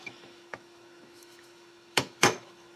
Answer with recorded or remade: remade